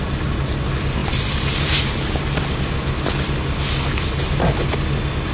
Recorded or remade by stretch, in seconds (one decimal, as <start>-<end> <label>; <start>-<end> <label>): 0.0-1.0 recorded; 1.0-1.8 remade; 1.8-5.3 recorded